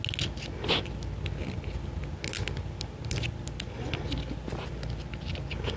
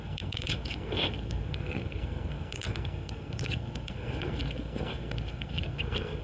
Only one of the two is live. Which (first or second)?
first